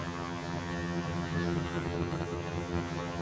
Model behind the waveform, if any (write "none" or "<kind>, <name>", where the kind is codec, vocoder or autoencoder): vocoder, HiFi-GAN